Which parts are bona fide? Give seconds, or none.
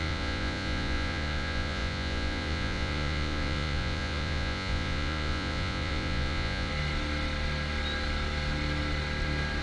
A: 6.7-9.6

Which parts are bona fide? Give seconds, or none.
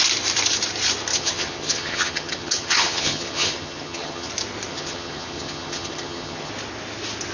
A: 0.0-1.1; 4.3-4.7; 6.5-7.3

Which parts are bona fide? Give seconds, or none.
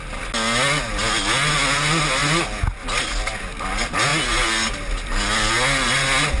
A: 0.0-6.4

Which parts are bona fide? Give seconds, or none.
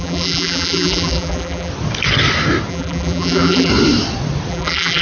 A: 1.7-2.7; 3.7-4.5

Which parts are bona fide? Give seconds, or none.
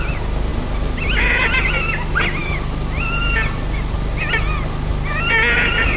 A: 0.0-6.0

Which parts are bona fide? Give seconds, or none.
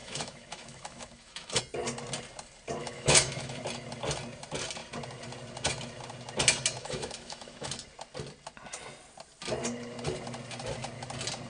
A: 1.6-2.8; 3.6-6.8; 7.7-11.5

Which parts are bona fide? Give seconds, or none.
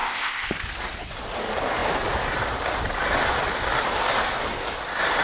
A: 0.5-5.2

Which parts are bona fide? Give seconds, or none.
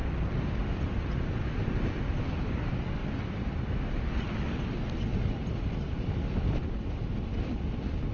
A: 0.0-8.1